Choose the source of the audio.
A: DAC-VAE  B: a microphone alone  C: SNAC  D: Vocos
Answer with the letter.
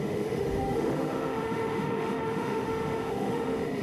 A